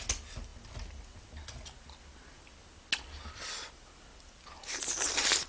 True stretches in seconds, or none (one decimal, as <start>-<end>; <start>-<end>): 0.0-5.5